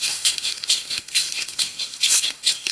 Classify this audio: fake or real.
fake